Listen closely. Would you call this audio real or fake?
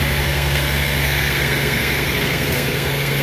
fake